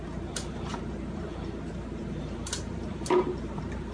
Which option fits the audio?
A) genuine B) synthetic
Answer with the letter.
B